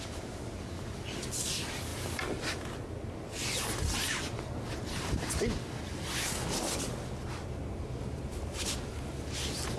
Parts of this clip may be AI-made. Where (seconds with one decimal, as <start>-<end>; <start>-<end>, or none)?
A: none